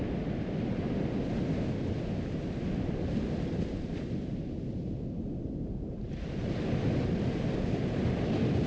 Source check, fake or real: real